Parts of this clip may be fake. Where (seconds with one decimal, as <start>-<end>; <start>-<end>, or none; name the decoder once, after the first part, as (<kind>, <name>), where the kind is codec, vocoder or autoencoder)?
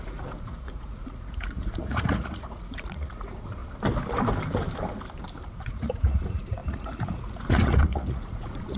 0.0-3.6 (vocoder, Vocos); 5.6-8.8